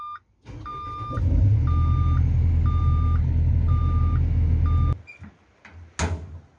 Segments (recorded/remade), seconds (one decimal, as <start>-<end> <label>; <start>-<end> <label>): 0.0-3.2 recorded; 3.2-3.7 remade; 3.7-6.6 recorded